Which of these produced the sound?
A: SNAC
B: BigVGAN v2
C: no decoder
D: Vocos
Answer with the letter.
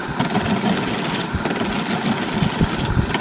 C